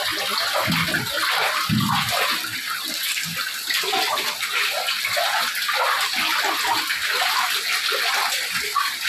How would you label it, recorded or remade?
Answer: recorded